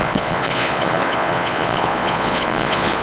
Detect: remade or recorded remade